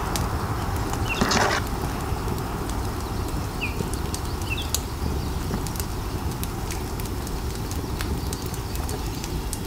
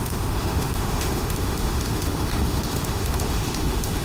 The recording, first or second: first